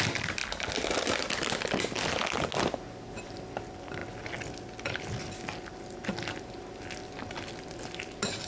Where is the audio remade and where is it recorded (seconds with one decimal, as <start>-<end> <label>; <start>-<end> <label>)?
0.0-8.5 recorded